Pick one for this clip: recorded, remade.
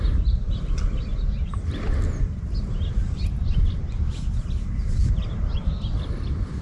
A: recorded